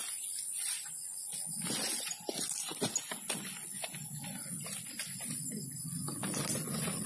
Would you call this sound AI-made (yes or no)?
no